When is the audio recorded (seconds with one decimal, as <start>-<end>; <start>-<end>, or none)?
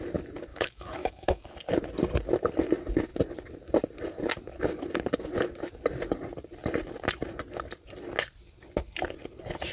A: 0.0-0.5; 1.5-9.7